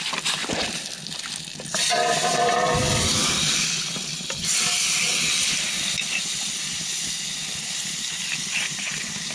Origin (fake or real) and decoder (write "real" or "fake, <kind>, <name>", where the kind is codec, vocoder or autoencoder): fake, vocoder, BigVGAN v2